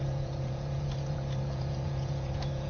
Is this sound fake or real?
fake